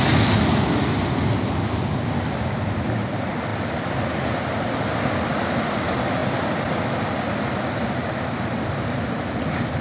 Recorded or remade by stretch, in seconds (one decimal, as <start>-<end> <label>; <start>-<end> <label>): 0.0-9.8 recorded